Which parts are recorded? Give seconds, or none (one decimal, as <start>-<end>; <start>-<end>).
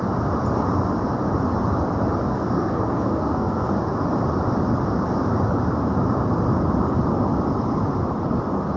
0.0-2.2; 3.7-8.8